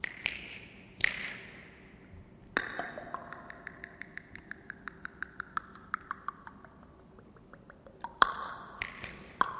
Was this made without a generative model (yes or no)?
yes